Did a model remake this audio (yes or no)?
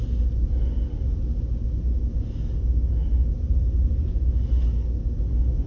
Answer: no